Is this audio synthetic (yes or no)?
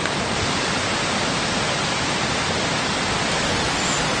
no